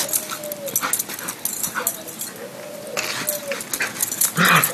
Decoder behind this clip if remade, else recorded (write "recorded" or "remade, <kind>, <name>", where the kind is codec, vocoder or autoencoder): recorded